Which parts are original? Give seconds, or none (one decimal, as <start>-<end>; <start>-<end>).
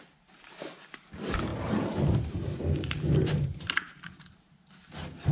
0.0-1.5; 4.2-5.3